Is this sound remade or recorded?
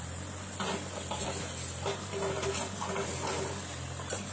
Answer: recorded